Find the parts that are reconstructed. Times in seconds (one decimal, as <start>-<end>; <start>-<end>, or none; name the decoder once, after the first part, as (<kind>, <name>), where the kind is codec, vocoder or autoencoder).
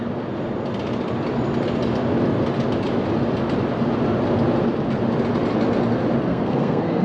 6.3-7.0 (codec, SNAC)